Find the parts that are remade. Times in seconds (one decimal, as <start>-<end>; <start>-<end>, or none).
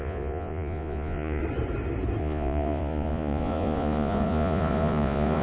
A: 0.0-1.4; 2.2-5.4